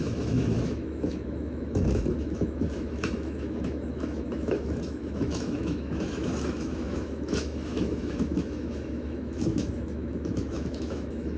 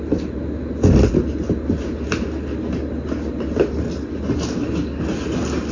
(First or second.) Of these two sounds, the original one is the second